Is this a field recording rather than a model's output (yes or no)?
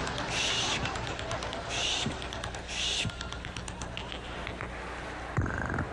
yes